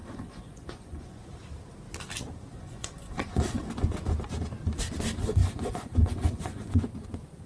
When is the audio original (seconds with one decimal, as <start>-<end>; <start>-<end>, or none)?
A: 1.2-2.5; 3.7-5.4; 6.8-7.5